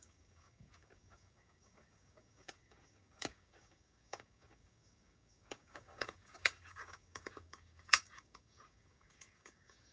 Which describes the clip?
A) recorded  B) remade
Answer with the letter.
B